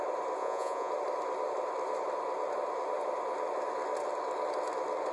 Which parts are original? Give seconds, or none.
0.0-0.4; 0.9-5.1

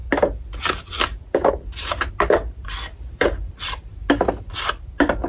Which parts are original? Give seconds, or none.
0.0-2.1; 3.9-4.5

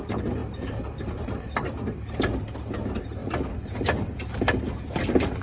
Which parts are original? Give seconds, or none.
0.0-5.4

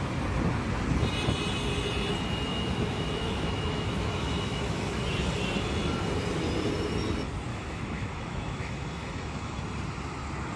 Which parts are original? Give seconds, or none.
0.0-2.5; 5.0-7.5; 9.6-10.6

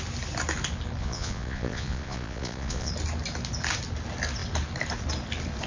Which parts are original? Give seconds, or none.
0.0-1.0; 2.9-5.7

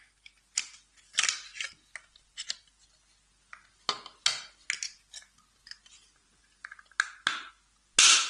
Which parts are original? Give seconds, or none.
0.0-8.3

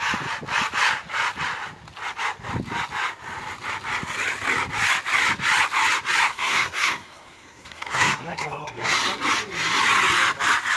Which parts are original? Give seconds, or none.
0.0-6.2; 8.9-10.8

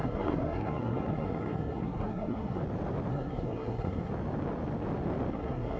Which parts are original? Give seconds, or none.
2.6-3.1; 4.1-5.3